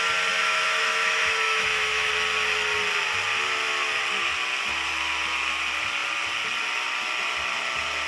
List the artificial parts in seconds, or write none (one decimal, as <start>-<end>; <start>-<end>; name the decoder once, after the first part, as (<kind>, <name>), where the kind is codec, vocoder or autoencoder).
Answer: 0.4-2.1 (autoencoder, DAC-VAE)